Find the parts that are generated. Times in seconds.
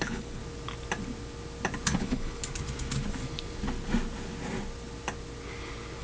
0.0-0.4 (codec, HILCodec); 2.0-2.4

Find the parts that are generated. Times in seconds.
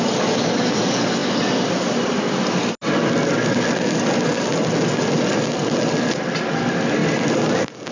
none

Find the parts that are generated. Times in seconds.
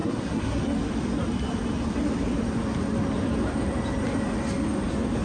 0.0-0.6 (codec, SNAC)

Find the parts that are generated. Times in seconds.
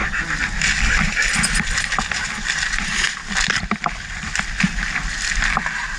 none